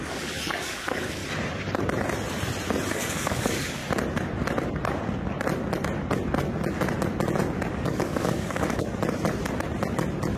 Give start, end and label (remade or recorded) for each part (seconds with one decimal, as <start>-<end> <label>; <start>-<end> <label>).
0.0-1.2 remade; 1.2-2.9 recorded; 2.9-3.8 remade; 3.8-7.7 recorded; 7.7-8.9 remade; 8.9-10.4 recorded